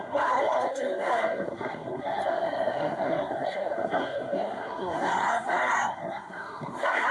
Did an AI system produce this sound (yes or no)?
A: yes